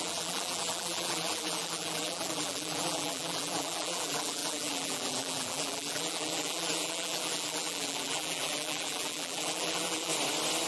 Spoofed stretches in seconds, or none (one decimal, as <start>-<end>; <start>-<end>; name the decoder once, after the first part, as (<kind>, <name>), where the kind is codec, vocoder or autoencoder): 0.0-10.1 (vocoder, BigVGAN v2)

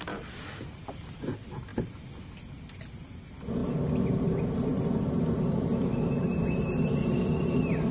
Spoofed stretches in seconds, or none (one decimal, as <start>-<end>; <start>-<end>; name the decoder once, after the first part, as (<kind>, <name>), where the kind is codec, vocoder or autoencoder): none